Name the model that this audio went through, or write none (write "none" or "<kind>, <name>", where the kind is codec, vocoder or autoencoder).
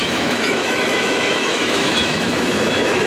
autoencoder, DAC-VAE